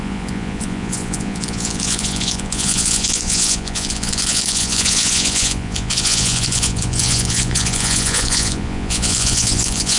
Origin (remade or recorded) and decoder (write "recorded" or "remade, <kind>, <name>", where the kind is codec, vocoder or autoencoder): remade, vocoder, Vocos